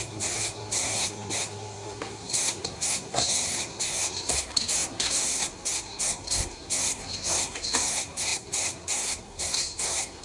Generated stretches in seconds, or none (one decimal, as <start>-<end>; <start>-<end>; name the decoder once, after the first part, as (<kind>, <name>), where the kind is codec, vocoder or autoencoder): 0.0-10.2 (codec, SNAC)